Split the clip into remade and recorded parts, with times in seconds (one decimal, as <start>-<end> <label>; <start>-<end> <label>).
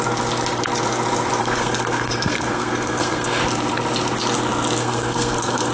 0.0-1.4 recorded; 1.4-3.4 remade; 3.4-4.8 recorded; 4.8-5.7 remade